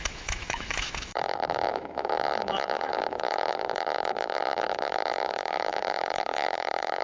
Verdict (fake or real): fake